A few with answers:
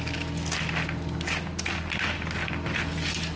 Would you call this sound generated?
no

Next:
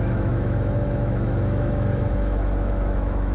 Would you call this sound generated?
yes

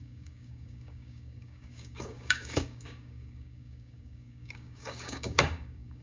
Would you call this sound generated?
yes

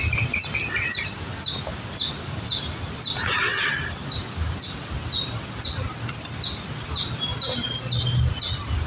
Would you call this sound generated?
no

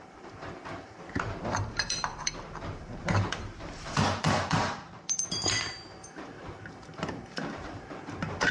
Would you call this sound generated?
yes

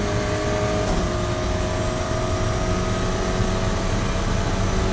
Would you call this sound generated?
no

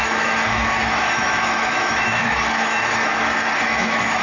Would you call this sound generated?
yes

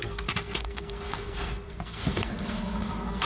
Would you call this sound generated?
yes